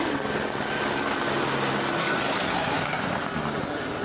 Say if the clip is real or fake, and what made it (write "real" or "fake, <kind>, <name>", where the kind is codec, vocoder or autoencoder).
real